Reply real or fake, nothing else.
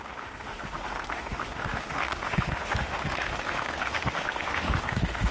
fake